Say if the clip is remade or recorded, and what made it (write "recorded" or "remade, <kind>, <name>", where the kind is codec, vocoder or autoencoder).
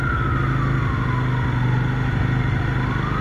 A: recorded